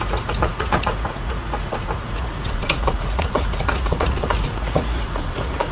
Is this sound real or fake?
fake